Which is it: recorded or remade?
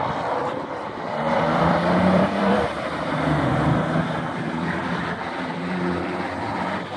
remade